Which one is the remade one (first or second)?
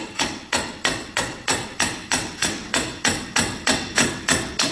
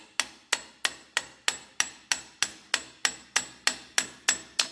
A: first